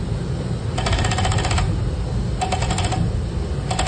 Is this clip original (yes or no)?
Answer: yes